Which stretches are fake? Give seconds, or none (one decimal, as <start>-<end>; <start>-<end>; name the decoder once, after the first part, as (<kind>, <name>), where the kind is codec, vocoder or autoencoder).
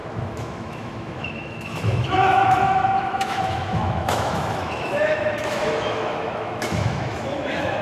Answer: 0.0-7.8 (autoencoder, DAC-VAE)